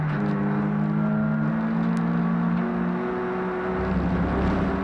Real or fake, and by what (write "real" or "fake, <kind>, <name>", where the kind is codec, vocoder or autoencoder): real